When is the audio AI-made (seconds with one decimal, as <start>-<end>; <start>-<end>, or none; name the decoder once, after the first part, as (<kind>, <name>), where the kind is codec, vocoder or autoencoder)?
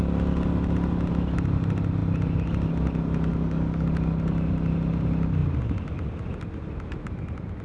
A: 3.3-3.9 (codec, DAC)